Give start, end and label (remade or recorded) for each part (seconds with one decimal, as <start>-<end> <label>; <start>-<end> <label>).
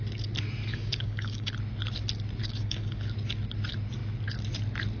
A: 0.0-0.7 recorded; 0.7-1.5 remade; 1.5-2.4 recorded; 2.4-3.0 remade; 3.0-5.0 recorded